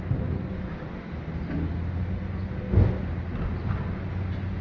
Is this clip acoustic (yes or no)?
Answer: yes